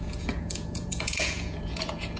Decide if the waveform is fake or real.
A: fake